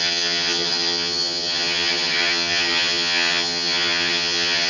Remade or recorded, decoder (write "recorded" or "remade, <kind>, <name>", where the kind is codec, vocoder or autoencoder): remade, vocoder, HiFi-GAN